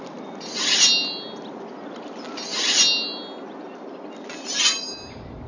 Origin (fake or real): real